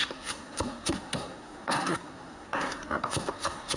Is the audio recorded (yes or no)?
no